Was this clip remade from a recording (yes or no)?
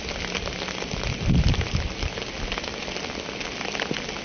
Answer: no